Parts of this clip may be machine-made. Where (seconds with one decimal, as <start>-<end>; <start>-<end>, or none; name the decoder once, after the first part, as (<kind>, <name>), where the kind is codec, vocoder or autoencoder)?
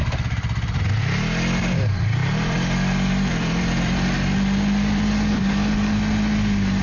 0.0-1.0 (vocoder, BigVGAN v2); 2.2-5.5